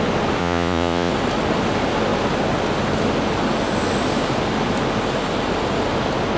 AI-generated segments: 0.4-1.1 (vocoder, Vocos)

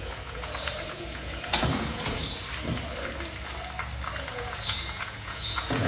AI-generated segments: 0.0-2.2 (vocoder, Vocos); 4.3-5.9

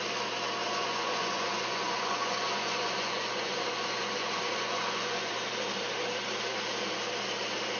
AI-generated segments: 0.6-5.3 (vocoder, Vocos)